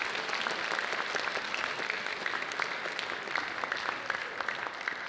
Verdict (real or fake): real